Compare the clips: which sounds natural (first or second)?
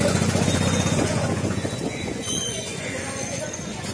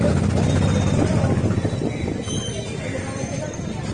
second